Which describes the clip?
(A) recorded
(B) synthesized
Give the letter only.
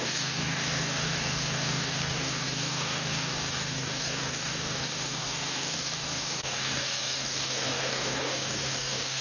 B